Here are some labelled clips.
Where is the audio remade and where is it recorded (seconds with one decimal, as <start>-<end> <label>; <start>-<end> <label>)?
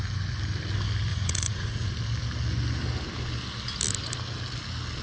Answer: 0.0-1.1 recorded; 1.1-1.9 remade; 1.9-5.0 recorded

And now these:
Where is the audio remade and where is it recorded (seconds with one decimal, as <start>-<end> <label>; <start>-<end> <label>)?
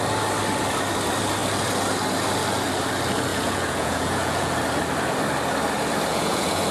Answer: 0.0-3.3 recorded; 3.3-4.5 remade; 4.5-6.1 recorded; 6.1-6.7 remade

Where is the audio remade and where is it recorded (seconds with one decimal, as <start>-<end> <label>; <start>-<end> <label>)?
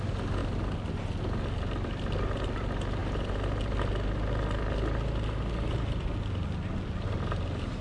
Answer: 0.0-7.8 recorded